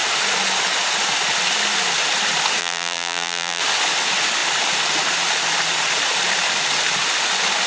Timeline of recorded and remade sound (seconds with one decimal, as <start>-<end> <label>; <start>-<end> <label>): 0.0-2.6 recorded; 2.6-3.6 remade; 3.6-7.7 recorded